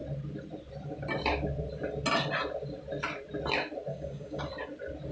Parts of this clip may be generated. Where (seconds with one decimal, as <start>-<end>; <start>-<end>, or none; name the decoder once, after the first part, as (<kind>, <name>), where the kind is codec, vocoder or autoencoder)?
3.9-4.4 (codec, DAC)